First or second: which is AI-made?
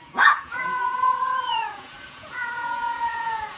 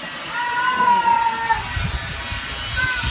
first